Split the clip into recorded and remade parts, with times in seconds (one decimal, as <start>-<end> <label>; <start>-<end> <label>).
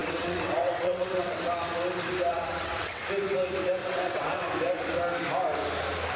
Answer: 0.0-1.4 remade; 1.4-2.3 recorded; 2.3-3.0 remade; 3.0-3.8 recorded; 3.8-4.4 remade; 4.4-6.2 recorded